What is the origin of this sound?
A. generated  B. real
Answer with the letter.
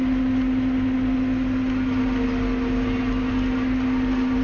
B